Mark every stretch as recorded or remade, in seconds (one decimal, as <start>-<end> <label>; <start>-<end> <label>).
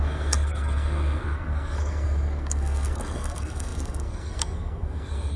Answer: 0.0-5.4 remade